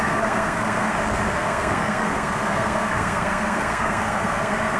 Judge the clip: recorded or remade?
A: remade